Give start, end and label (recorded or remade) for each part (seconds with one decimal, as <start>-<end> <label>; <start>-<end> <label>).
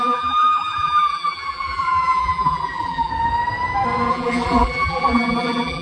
0.0-3.1 remade; 3.1-4.1 recorded; 4.1-5.8 remade